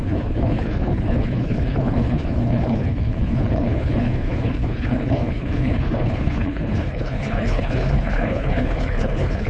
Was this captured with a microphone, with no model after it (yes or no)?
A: no